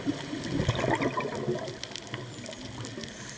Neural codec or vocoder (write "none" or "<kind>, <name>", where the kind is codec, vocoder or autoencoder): none